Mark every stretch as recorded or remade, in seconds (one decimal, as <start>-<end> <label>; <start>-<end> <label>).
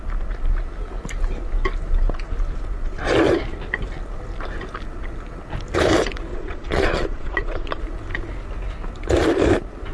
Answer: 0.0-6.3 recorded; 6.3-7.8 remade; 7.8-9.9 recorded